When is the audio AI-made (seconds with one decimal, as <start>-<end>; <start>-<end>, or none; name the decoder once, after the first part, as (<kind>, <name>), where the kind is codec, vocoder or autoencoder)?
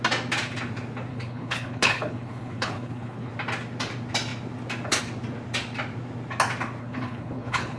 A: 1.1-3.3 (codec, HILCodec); 6.8-7.8